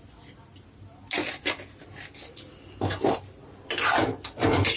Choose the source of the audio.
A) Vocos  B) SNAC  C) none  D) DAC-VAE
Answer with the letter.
C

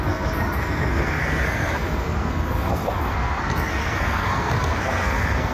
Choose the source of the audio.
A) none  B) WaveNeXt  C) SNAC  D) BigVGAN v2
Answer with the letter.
C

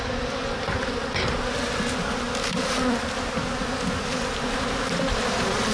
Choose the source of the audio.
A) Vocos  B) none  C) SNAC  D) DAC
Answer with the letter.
B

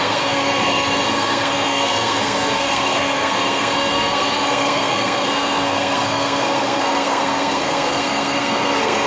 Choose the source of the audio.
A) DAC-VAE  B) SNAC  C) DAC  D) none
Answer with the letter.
B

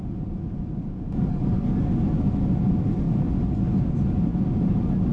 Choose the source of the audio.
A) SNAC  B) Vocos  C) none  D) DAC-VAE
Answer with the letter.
C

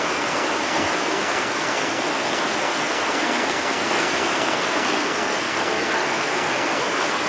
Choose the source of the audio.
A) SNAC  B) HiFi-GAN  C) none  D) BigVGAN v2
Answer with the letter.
A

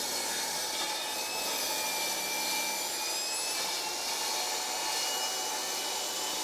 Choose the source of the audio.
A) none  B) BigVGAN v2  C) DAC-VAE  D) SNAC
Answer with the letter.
A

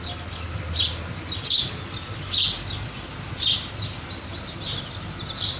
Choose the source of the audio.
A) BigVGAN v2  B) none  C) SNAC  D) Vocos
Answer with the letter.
B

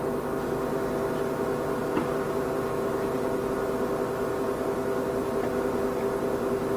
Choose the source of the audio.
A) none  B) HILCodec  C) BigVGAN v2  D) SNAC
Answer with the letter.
A